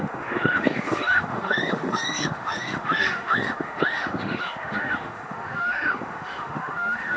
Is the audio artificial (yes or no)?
yes